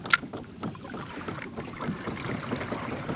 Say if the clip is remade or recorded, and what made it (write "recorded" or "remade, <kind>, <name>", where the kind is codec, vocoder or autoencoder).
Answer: recorded